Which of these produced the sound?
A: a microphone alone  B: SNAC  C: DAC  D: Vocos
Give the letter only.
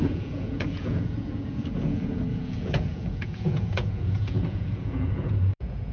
D